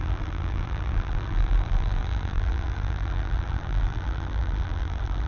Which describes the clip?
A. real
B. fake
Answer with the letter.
B